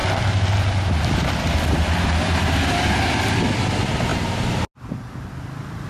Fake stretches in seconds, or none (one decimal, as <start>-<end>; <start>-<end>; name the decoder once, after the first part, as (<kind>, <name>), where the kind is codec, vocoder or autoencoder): 0.0-3.5 (vocoder, BigVGAN v2)